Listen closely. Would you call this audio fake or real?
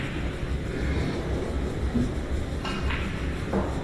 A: real